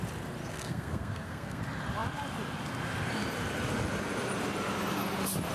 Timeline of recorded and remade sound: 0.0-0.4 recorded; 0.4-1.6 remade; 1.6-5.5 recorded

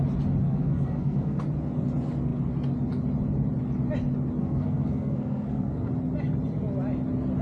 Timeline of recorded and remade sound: 0.0-0.4 recorded; 0.4-1.4 remade; 1.4-4.4 recorded; 4.4-5.9 remade; 5.9-7.4 recorded

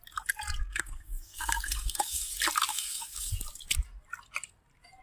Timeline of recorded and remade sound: 0.0-0.6 recorded; 0.6-2.3 remade; 2.3-2.7 recorded; 2.7-3.3 remade; 3.3-5.0 recorded

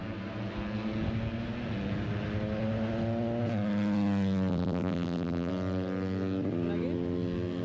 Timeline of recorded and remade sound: 0.0-4.5 recorded; 4.5-5.5 remade; 5.5-7.6 recorded